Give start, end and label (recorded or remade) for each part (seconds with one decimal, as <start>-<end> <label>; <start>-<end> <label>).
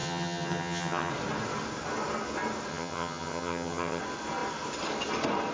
0.0-1.1 remade; 1.1-2.7 recorded; 2.7-4.0 remade; 4.0-5.5 recorded